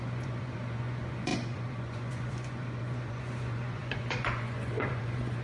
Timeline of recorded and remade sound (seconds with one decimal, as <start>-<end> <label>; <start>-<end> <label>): 0.0-5.4 remade